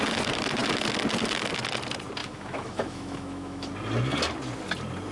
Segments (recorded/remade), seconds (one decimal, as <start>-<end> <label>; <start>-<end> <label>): 0.0-2.2 recorded; 2.2-3.7 remade; 3.7-5.1 recorded